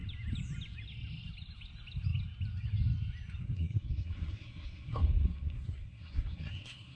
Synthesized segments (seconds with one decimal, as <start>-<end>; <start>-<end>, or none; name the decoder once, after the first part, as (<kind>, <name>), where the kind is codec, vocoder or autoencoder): 3.4-7.0 (codec, SNAC)

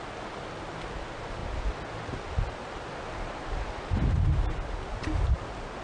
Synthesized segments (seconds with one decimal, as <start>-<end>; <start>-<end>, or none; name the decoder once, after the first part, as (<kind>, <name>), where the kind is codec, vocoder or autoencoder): none

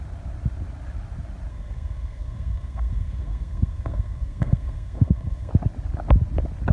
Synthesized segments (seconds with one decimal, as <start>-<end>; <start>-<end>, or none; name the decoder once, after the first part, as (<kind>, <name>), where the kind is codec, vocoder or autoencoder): 1.5-5.5 (codec, SNAC)

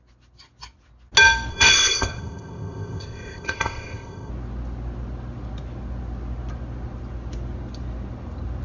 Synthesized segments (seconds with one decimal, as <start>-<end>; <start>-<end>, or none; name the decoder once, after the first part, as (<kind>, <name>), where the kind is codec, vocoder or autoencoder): 1.5-4.3 (codec, ZipCodec)